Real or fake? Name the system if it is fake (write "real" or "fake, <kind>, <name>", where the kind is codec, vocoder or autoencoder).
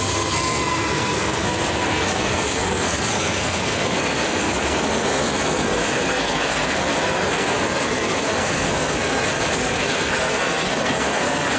fake, codec, SNAC